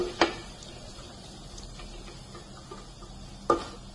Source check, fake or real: real